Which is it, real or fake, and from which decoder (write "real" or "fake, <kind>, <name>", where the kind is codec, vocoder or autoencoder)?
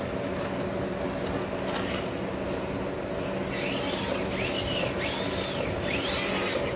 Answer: real